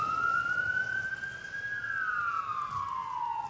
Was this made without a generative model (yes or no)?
yes